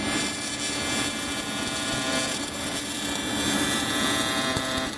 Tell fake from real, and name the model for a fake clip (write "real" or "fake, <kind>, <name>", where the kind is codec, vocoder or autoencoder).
fake, vocoder, BigVGAN v2